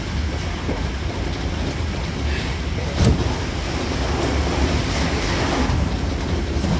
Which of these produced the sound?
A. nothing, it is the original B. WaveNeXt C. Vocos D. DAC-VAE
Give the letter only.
A